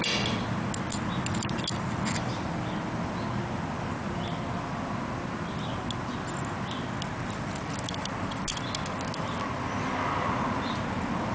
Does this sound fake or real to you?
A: real